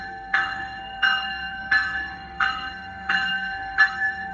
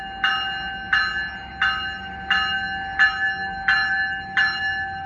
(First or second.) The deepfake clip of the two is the first